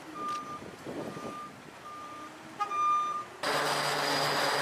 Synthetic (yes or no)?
no